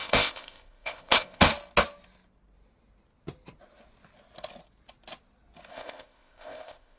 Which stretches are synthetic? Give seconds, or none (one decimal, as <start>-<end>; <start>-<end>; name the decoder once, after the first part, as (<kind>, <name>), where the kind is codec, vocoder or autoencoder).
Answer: 0.0-1.5 (codec, ZipCodec); 5.7-7.0